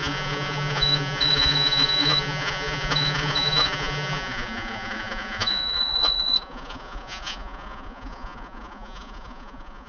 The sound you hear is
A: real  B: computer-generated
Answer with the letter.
B